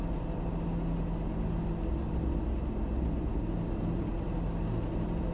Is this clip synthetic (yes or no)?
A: no